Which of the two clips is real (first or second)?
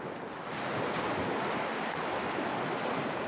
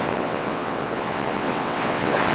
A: first